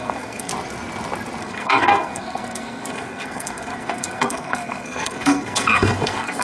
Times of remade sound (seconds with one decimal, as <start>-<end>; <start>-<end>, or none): 0.0-0.5; 1.4-6.4